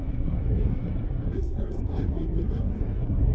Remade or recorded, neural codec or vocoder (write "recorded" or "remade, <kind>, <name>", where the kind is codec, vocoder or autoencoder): remade, codec, SNAC